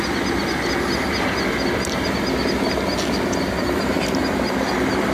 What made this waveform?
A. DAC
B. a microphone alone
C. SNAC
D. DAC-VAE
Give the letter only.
B